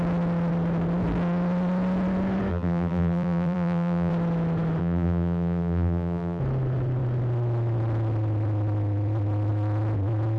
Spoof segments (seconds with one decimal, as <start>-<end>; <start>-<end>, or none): 2.5-4.1; 4.8-6.4